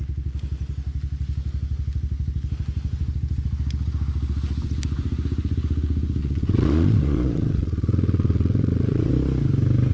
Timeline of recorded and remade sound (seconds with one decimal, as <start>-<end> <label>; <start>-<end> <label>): 0.0-6.2 recorded; 6.2-9.1 remade; 9.1-9.9 recorded